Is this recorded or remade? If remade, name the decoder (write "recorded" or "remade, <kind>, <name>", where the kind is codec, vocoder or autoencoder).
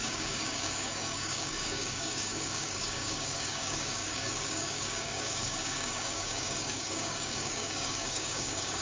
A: remade, codec, DAC